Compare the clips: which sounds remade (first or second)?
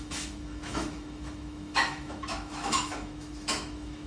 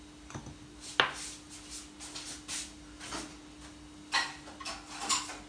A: first